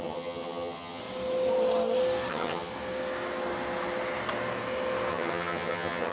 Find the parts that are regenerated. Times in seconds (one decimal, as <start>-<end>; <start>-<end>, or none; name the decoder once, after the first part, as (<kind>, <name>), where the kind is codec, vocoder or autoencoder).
0.0-1.0 (vocoder, HiFi-GAN); 2.3-2.7; 5.1-6.1